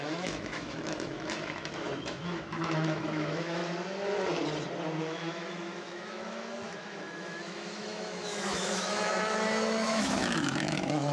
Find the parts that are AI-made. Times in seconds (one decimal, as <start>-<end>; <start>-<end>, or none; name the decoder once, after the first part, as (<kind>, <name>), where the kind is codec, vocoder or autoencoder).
0.0-3.6 (autoencoder, DAC-VAE); 5.0-11.1